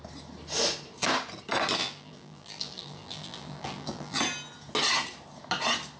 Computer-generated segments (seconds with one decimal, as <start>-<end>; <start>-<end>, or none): 1.8-4.2